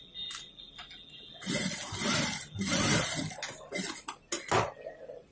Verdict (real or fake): real